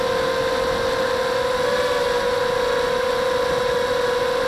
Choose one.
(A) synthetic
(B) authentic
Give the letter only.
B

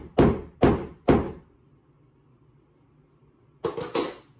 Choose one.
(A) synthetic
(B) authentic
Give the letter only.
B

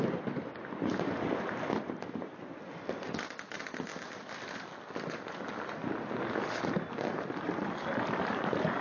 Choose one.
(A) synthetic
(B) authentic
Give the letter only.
B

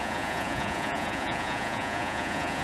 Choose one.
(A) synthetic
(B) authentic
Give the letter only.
A